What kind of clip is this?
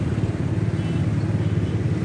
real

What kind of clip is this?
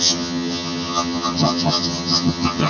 fake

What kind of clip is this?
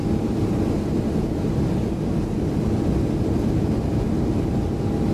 real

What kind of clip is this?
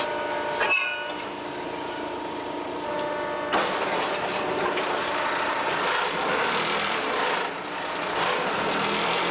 real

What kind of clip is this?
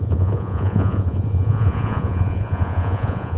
fake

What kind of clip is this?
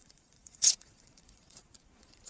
fake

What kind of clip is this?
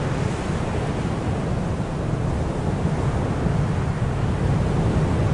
real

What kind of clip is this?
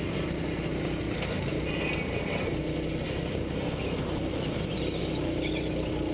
real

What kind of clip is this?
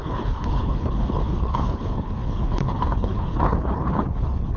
fake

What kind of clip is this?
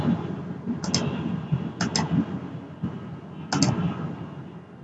real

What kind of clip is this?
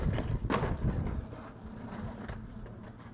real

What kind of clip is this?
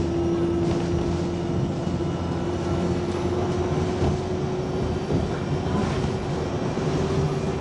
real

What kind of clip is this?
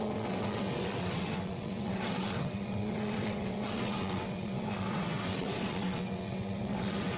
fake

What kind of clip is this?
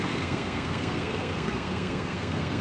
fake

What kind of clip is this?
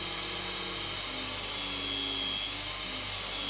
real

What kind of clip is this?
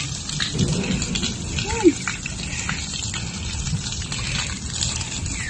real